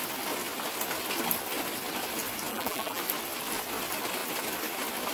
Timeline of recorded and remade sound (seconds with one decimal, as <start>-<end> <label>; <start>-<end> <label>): 0.0-2.5 recorded; 2.5-3.0 remade; 3.0-5.1 recorded